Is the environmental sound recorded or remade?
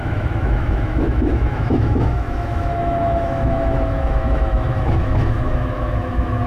remade